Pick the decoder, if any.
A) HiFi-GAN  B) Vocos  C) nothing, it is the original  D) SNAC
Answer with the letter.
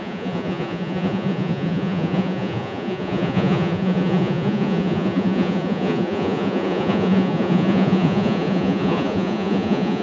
B